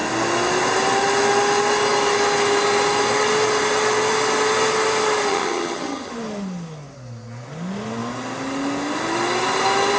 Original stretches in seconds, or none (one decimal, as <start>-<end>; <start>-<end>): 0.0-5.3; 6.1-10.0